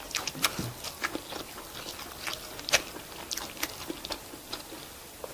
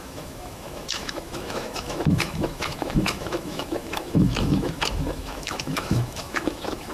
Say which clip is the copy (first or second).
second